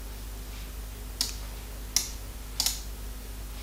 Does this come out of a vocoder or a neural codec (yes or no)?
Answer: no